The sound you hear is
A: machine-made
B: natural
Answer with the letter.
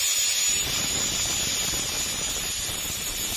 B